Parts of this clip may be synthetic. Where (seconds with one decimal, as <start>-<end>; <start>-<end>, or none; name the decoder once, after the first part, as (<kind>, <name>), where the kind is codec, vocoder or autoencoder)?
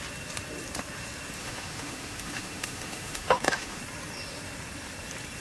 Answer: 1.4-3.8 (autoencoder, DAC-VAE)